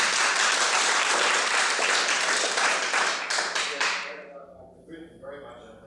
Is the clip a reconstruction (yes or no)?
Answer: yes